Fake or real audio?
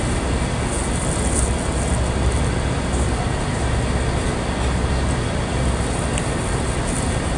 real